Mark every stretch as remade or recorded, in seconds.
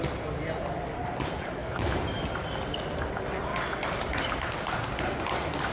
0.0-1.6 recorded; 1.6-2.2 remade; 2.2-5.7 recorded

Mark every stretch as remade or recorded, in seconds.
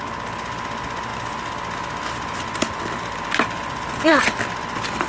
0.0-5.1 recorded